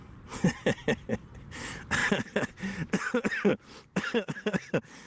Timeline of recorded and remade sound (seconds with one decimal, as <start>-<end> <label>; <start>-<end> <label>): 0.0-3.5 recorded; 3.5-4.5 remade; 4.5-5.1 recorded